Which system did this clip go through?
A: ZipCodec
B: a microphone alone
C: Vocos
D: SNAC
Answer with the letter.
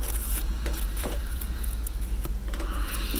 C